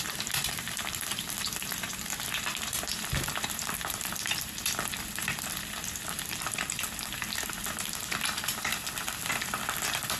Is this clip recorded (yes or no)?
no